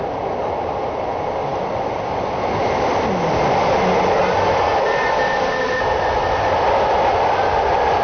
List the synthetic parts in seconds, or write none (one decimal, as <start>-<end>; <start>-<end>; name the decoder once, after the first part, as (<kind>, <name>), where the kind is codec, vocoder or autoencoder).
none